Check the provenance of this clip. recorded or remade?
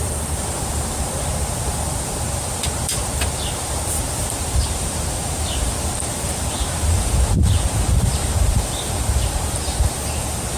remade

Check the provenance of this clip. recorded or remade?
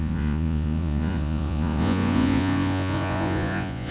remade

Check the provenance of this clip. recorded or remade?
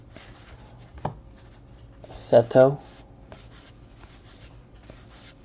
recorded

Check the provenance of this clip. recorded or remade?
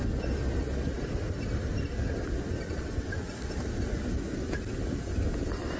recorded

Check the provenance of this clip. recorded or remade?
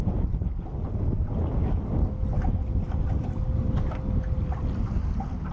recorded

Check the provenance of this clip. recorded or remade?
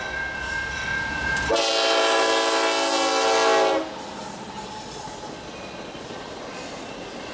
recorded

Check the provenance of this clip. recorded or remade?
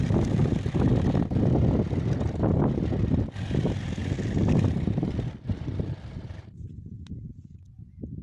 recorded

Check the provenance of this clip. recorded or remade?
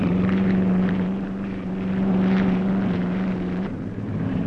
remade